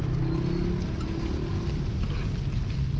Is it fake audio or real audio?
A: real